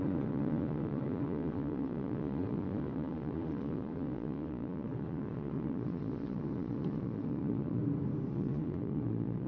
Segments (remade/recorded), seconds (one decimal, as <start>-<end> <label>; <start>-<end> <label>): 0.0-7.8 remade; 7.8-8.3 recorded; 8.3-9.5 remade

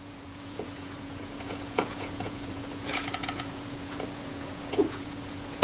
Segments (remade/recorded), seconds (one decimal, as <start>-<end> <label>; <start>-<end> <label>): 0.0-5.6 remade

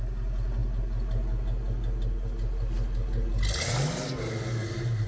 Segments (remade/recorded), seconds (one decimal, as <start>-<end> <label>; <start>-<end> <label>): 0.0-5.1 recorded